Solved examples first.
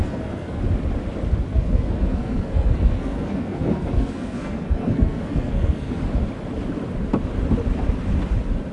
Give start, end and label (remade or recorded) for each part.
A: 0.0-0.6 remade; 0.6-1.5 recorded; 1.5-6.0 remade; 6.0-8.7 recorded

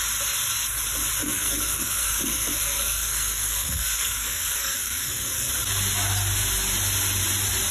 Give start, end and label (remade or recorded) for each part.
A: 0.0-1.2 recorded; 1.2-5.5 remade; 5.5-7.7 recorded

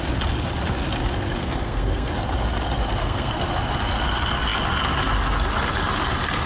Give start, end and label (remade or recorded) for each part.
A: 0.0-1.4 recorded; 1.4-2.1 remade; 2.1-3.0 recorded; 3.0-3.5 remade; 3.5-6.5 recorded